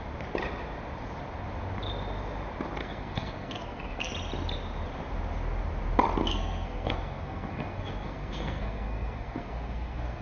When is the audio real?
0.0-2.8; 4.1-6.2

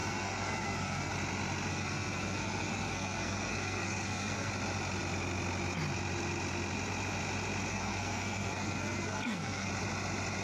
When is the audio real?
1.1-1.7; 4.5-7.7; 9.7-10.4